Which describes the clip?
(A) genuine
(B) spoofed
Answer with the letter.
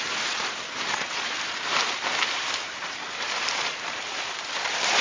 B